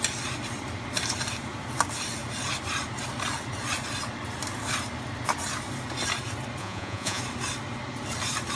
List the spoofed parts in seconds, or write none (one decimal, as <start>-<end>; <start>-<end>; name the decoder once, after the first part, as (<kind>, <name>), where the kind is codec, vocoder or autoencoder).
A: 6.6-7.2 (vocoder, Vocos)